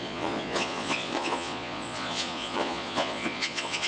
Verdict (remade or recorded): remade